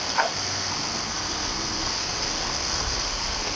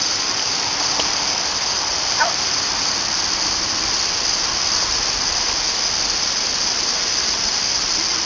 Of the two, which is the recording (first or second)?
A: second